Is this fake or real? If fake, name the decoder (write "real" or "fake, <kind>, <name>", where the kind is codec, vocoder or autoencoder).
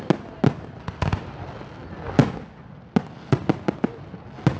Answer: real